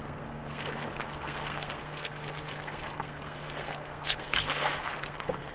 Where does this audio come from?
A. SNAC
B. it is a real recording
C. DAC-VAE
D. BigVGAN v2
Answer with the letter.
A